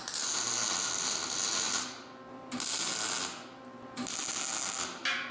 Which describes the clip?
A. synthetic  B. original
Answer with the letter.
B